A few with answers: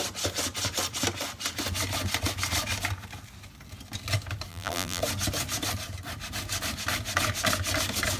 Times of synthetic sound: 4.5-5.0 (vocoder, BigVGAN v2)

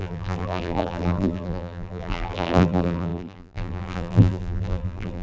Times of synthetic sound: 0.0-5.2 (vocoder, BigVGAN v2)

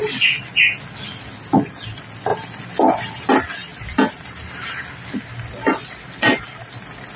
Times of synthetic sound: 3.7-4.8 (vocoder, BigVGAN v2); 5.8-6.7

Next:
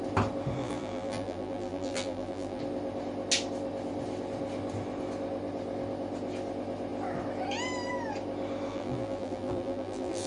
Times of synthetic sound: 0.6-2.6 (vocoder, BigVGAN v2); 8.7-10.3